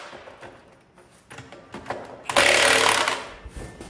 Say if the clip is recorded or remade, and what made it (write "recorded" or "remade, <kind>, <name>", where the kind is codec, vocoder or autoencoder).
recorded